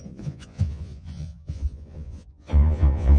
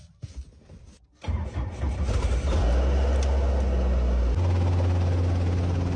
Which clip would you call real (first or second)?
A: second